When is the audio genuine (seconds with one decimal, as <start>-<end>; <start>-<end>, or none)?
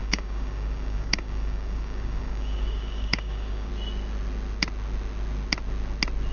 3.7-6.3